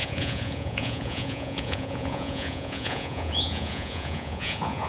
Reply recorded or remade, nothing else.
remade